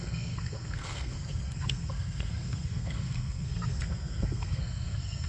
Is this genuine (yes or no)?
no